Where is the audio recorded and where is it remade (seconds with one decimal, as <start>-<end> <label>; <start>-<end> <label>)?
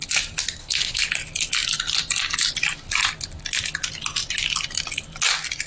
0.0-0.6 recorded; 0.6-1.1 remade; 1.1-5.7 recorded